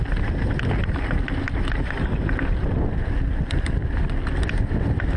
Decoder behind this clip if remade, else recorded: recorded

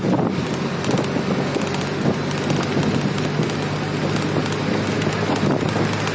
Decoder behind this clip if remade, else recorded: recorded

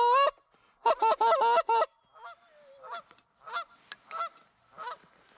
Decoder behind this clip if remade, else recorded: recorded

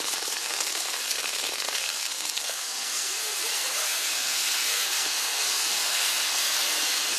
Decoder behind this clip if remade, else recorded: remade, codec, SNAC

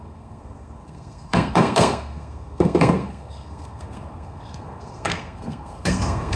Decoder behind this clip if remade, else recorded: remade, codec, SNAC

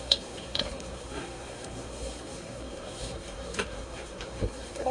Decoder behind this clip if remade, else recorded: remade, codec, SNAC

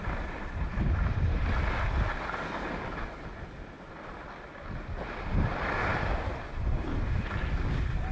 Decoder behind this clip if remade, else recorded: recorded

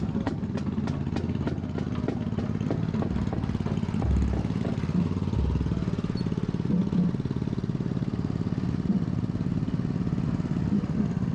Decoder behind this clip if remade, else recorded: recorded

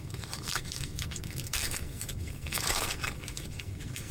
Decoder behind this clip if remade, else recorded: remade, codec, SNAC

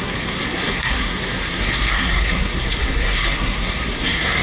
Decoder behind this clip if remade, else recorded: remade, codec, SNAC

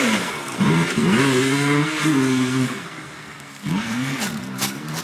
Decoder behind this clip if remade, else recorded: remade, codec, SNAC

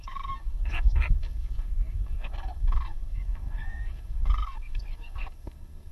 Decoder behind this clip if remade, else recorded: remade, codec, SNAC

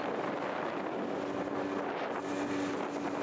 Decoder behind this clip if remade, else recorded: recorded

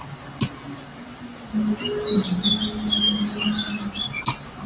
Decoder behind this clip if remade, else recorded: recorded